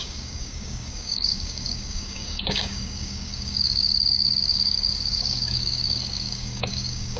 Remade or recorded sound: remade